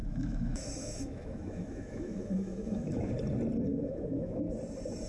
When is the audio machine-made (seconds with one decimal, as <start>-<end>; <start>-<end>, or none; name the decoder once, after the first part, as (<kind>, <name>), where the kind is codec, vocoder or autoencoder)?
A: 0.0-3.1 (autoencoder, DAC-VAE); 3.7-4.4